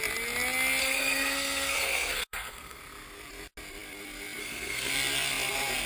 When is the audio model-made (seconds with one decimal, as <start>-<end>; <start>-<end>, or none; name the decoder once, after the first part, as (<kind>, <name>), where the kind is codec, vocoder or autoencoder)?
0.8-2.8 (codec, SNAC); 4.4-4.9